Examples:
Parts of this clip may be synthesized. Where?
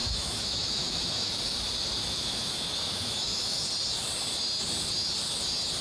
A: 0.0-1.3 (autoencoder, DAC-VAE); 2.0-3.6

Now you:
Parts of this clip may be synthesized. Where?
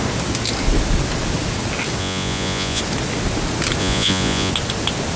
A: 2.0-2.8 (vocoder, Vocos); 3.8-4.5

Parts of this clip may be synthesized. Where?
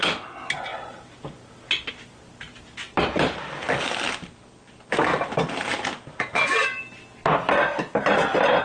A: none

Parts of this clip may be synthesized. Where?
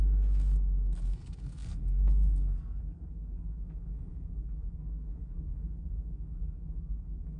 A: 0.0-7.4 (codec, SNAC)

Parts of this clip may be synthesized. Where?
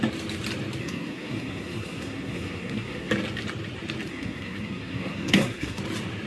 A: 0.8-3.1 (codec, SNAC); 4.1-5.8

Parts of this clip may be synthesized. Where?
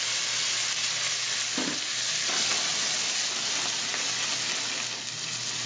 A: none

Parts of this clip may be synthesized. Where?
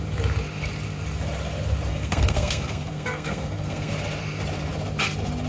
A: 1.9-3.9 (codec, SNAC)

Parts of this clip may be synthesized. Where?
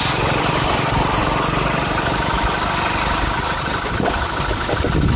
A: none